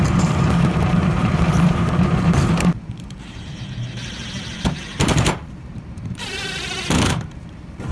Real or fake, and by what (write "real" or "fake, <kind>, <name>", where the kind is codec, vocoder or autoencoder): fake, vocoder, BigVGAN v2